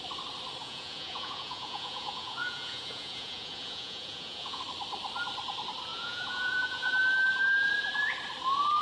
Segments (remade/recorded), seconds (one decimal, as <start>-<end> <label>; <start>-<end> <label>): 0.0-0.6 recorded; 0.6-4.6 remade; 4.6-5.9 recorded; 5.9-6.9 remade; 6.9-8.8 recorded